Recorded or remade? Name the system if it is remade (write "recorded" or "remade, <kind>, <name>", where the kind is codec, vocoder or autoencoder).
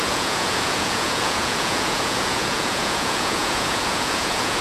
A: remade, vocoder, Vocos